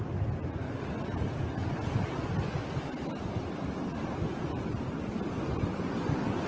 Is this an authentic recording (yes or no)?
yes